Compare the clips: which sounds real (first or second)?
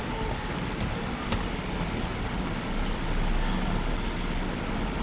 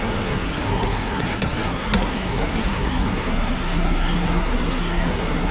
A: first